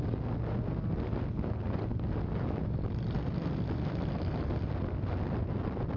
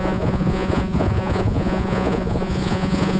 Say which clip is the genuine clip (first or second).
first